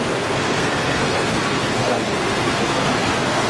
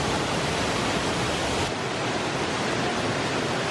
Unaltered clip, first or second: second